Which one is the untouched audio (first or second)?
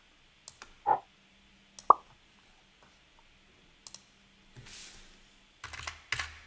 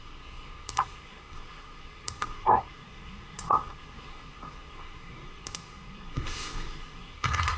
first